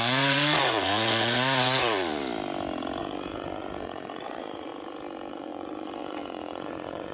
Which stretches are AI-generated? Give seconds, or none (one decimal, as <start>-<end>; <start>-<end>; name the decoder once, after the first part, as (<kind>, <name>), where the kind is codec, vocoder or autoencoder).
0.0-2.2 (vocoder, Vocos); 3.0-4.7; 5.3-7.1

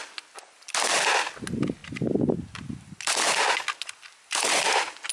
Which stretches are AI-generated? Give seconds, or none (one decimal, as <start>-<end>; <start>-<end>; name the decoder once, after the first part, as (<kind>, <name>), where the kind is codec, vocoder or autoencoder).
none

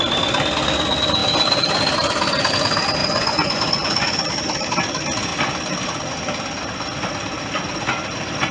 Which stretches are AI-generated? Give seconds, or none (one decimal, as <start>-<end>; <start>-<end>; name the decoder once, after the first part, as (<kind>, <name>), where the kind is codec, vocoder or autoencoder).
3.0-4.3 (vocoder, Vocos)

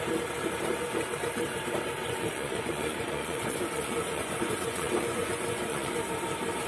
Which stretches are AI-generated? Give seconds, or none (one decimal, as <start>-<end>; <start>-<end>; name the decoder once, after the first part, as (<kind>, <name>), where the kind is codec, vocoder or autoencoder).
2.0-6.0 (vocoder, Vocos)

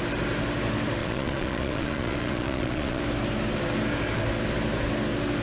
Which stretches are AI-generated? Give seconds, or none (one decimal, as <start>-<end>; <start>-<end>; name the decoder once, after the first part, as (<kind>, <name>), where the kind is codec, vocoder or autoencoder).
1.0-3.0 (vocoder, Vocos)